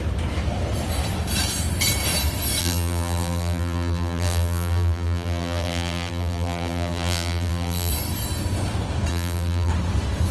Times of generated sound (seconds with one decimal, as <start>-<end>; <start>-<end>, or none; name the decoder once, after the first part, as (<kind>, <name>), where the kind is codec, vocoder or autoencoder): 2.6-7.9 (vocoder, BigVGAN v2); 9.1-9.7